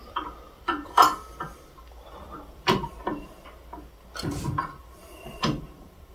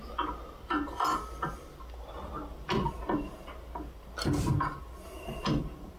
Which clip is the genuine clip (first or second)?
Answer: second